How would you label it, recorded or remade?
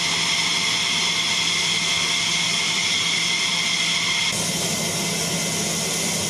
recorded